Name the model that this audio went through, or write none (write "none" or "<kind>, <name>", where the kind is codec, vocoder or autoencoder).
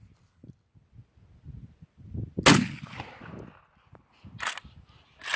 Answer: none